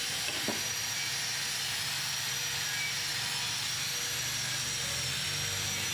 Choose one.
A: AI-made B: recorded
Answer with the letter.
B